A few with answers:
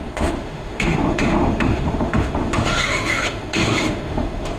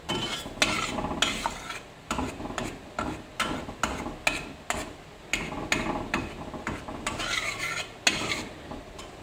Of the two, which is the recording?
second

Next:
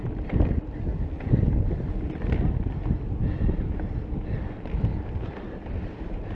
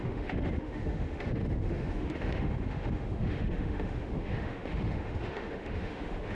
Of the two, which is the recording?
first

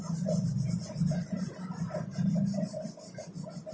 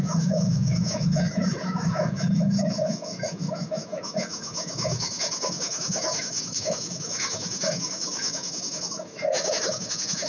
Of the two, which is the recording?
first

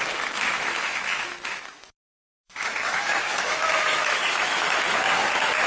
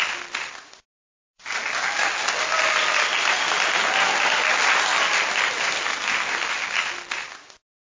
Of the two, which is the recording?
second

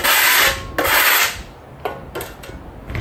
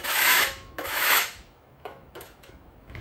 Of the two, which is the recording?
first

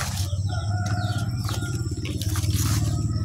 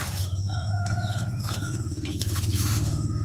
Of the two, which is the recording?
first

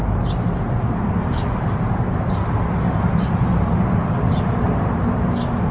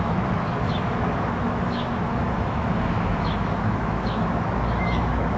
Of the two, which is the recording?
first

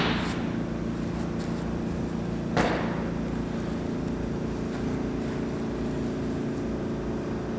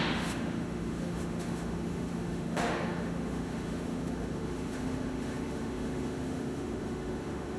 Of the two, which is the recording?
first